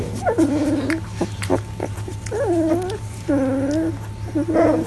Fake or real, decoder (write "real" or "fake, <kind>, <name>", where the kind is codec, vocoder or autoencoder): real